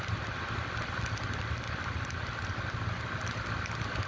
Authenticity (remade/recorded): recorded